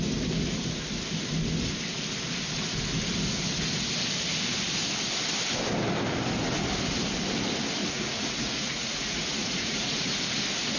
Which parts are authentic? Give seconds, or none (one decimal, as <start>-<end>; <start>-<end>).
0.0-7.8; 10.2-10.8